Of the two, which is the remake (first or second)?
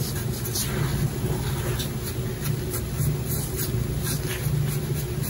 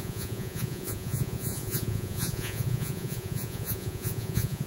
second